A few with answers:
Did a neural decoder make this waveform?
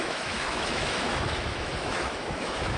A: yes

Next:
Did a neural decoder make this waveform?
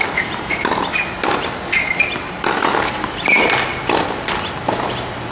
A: no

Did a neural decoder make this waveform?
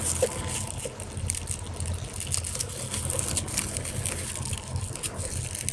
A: no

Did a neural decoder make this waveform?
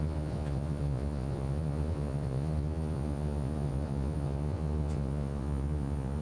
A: yes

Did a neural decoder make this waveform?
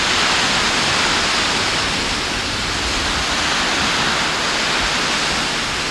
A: no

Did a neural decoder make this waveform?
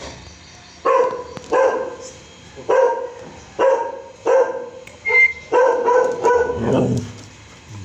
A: no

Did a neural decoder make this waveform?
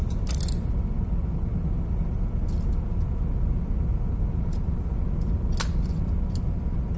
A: no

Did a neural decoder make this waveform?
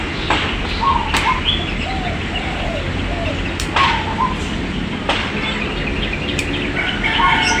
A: no